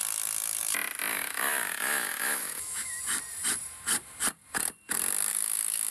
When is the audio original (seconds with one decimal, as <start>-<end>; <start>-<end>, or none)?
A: 0.0-1.1; 3.0-5.3